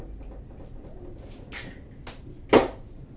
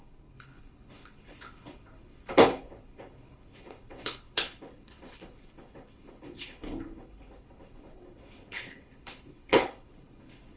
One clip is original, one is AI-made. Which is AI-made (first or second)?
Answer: second